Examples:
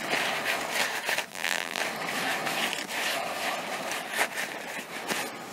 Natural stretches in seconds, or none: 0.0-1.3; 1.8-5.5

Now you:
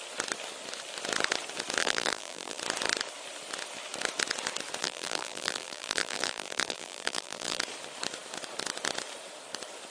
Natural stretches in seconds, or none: 0.0-1.8; 2.6-4.8; 7.6-9.9

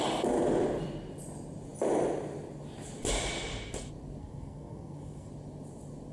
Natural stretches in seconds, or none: 0.0-4.2; 5.3-6.1

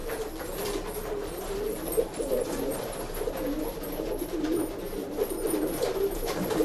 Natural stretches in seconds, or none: 2.8-5.0